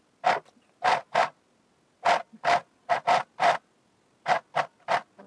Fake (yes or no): no